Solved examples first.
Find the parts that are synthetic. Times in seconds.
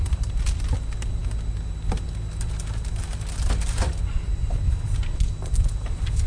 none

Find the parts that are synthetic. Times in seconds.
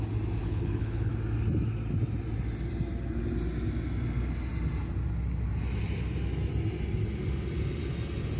0.4-1.1 (codec, HILCodec)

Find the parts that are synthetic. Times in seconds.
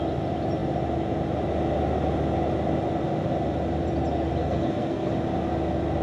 4.4-5.1 (codec, SNAC)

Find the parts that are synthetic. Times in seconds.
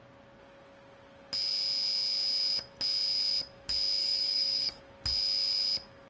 4.0-4.8 (codec, DAC)